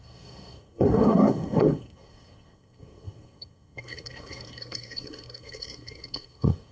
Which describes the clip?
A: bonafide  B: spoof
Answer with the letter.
B